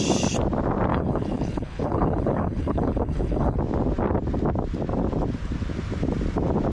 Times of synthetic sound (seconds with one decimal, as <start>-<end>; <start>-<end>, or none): 0.9-3.6